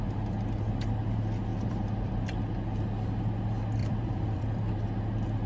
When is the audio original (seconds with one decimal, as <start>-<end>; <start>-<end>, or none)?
0.0-1.5; 2.1-3.8; 4.8-5.5

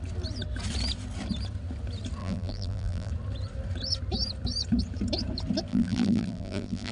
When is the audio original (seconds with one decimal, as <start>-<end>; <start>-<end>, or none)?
0.0-2.2; 3.1-5.7

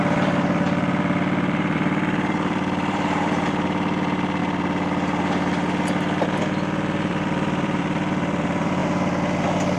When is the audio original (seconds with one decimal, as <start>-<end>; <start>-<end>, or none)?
4.4-6.4; 8.8-9.8

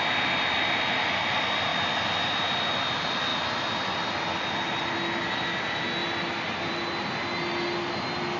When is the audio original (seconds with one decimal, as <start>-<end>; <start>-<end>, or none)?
0.0-6.0; 7.9-8.4

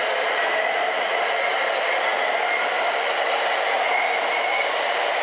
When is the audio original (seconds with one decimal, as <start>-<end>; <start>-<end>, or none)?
0.0-5.2

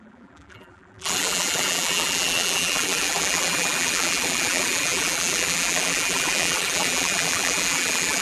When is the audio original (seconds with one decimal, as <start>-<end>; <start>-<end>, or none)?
none

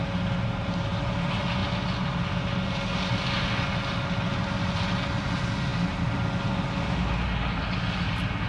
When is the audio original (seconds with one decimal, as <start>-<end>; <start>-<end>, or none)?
0.0-8.5

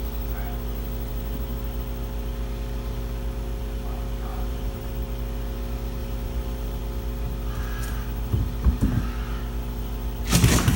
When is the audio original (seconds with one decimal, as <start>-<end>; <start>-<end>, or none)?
0.0-4.3; 4.9-6.0; 6.8-10.8